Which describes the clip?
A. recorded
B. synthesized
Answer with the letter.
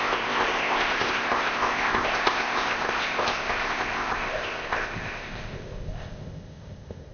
B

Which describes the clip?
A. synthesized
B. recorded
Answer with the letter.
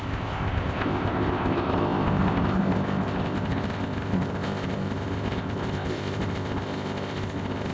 A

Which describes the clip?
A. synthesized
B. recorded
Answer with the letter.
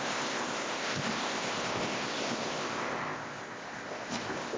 A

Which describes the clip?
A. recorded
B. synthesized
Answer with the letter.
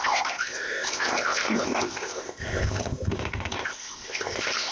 B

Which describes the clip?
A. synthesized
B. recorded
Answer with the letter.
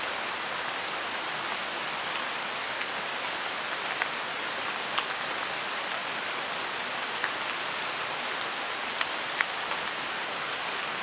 B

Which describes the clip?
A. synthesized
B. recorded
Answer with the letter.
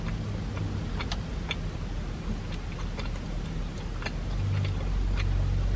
B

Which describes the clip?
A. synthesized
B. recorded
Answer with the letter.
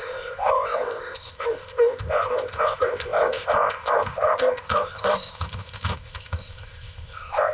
A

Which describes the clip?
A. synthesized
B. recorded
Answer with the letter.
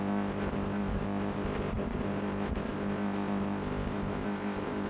A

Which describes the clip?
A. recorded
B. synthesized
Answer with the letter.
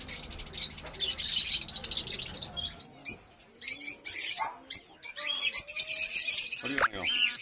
A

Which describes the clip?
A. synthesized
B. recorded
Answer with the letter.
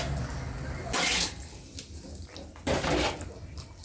B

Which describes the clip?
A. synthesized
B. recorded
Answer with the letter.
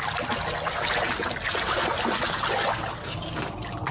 B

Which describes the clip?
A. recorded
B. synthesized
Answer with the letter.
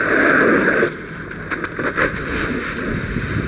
A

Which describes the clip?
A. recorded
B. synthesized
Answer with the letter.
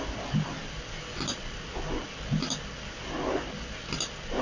A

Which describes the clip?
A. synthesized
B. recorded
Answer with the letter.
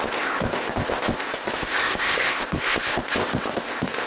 A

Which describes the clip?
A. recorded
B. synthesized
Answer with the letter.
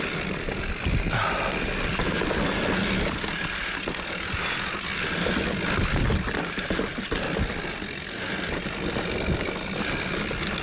A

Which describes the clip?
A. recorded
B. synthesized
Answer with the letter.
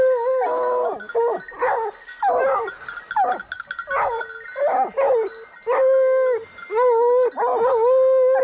A